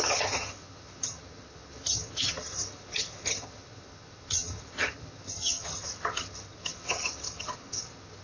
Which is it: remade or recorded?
remade